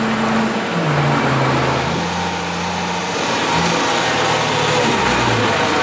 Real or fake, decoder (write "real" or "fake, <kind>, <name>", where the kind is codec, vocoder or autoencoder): real